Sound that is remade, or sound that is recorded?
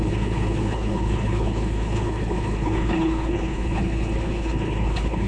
remade